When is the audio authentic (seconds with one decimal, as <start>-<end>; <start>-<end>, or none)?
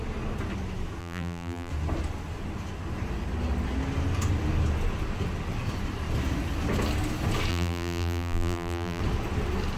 0.0-1.0; 1.7-7.5; 9.0-9.8